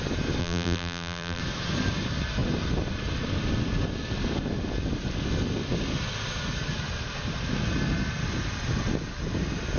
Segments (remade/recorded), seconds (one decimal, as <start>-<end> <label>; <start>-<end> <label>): 0.0-0.4 recorded; 0.4-1.4 remade; 1.4-9.8 recorded